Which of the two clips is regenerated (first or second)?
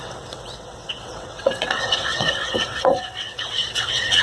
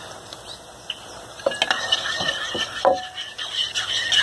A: first